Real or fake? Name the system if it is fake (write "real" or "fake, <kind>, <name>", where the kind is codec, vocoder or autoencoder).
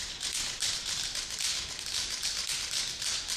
real